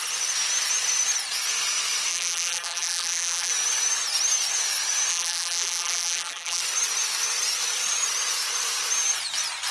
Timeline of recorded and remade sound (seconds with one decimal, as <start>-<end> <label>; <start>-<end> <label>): 0.0-2.1 recorded; 2.1-3.5 remade; 3.5-5.1 recorded; 5.1-6.6 remade; 6.6-9.7 recorded